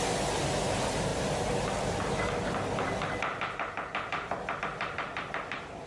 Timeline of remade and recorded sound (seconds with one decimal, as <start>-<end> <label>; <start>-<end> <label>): 0.0-5.9 recorded